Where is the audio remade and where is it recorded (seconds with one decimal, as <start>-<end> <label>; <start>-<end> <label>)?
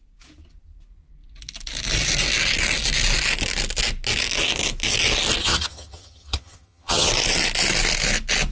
0.0-5.4 recorded; 5.4-7.1 remade; 7.1-8.5 recorded